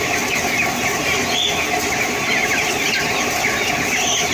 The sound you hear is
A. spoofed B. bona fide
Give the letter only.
B